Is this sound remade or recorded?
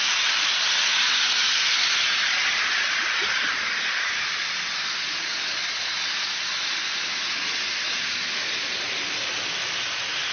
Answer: recorded